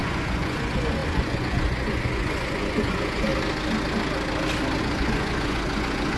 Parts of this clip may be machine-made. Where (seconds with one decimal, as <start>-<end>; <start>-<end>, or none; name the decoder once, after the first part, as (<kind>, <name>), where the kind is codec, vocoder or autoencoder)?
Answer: 0.0-3.3 (vocoder, Vocos); 4.8-6.2